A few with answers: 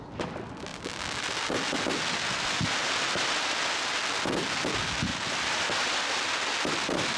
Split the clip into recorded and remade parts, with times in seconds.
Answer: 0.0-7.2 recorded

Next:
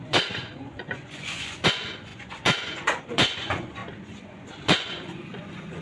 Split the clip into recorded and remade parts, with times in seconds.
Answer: 0.0-5.8 remade

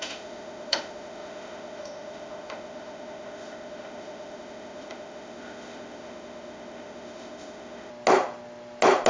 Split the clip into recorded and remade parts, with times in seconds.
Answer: 0.0-7.9 remade; 7.9-9.1 recorded

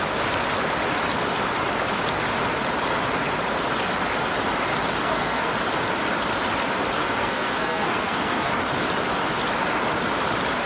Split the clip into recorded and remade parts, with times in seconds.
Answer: 0.0-5.0 recorded; 5.0-5.5 remade; 5.5-7.0 recorded; 7.0-8.5 remade; 8.5-10.7 recorded